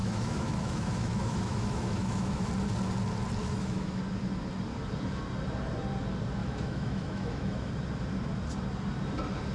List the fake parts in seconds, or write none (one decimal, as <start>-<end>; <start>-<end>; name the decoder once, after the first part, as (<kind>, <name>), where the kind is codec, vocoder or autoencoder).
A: 0.0-2.5 (autoencoder, DAC-VAE); 3.4-4.0; 6.4-7.7